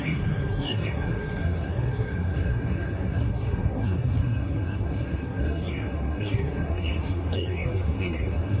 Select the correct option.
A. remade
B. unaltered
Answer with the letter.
A